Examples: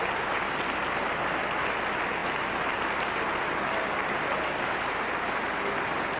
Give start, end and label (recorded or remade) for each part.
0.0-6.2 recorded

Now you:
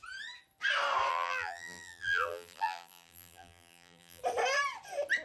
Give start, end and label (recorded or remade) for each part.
0.0-1.1 recorded; 1.1-4.2 remade; 4.2-5.2 recorded

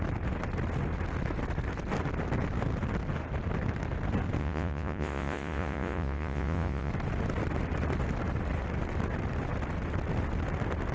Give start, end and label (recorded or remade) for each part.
0.0-4.4 recorded; 4.4-6.9 remade; 6.9-10.9 recorded

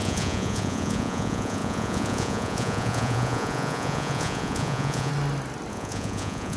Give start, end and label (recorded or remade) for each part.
0.0-5.1 remade; 5.1-5.7 recorded; 5.7-6.6 remade

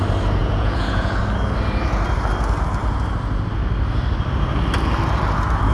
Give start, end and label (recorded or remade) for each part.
0.0-0.4 recorded; 0.4-1.2 remade; 1.2-5.7 recorded

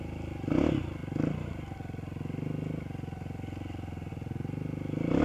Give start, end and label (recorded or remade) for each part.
0.0-5.2 recorded

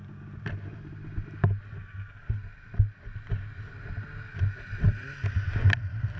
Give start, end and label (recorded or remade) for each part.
0.0-6.2 recorded